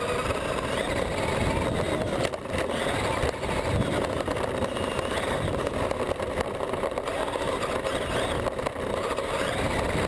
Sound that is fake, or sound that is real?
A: real